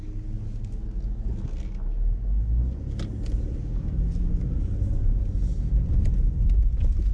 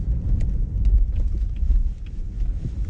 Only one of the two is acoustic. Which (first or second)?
first